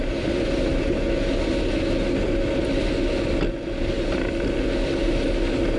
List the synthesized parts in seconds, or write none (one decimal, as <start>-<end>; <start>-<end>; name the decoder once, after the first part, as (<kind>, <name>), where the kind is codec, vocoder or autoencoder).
none